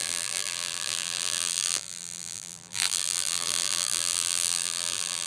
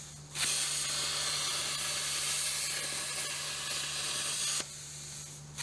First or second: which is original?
second